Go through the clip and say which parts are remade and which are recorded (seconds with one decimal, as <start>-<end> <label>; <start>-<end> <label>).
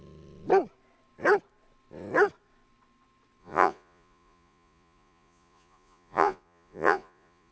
0.0-3.4 recorded; 3.4-7.5 remade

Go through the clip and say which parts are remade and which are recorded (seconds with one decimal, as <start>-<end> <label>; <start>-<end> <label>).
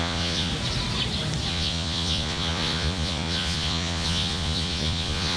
0.0-0.5 remade; 0.5-1.5 recorded; 1.5-5.4 remade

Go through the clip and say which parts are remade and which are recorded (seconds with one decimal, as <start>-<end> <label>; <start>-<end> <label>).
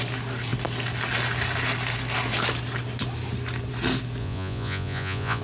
0.0-4.2 recorded; 4.2-5.4 remade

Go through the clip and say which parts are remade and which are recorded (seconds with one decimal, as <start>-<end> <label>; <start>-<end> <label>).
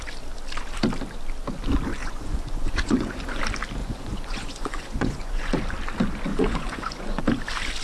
0.0-2.0 recorded; 2.0-3.4 remade; 3.4-3.8 recorded; 3.8-5.5 remade; 5.5-6.3 recorded; 6.3-7.2 remade; 7.2-7.8 recorded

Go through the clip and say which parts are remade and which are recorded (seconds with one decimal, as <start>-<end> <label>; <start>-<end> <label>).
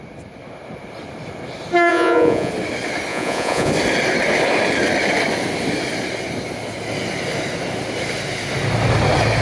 0.0-1.9 recorded; 1.9-2.5 remade; 2.5-3.1 recorded; 3.1-3.7 remade; 3.7-9.4 recorded